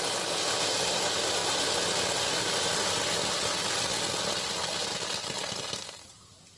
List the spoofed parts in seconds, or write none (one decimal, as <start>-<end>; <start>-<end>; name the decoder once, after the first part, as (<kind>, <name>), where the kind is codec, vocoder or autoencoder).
none

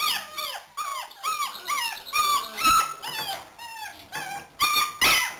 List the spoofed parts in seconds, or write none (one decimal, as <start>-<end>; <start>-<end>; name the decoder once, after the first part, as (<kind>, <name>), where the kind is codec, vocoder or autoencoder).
none

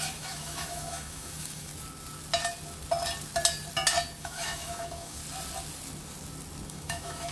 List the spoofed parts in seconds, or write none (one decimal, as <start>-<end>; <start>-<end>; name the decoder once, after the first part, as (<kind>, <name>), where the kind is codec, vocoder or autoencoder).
0.0-1.7 (autoencoder, DAC-VAE); 4.2-5.2; 6.7-7.3

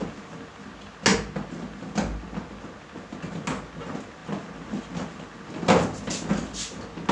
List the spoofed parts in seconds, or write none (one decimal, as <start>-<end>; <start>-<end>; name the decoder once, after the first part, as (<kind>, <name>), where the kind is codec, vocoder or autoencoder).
none